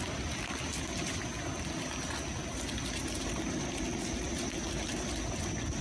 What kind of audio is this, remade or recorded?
recorded